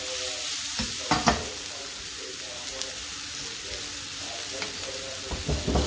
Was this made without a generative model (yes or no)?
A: yes